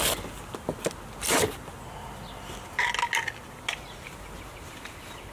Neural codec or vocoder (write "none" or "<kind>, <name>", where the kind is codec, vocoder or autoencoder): none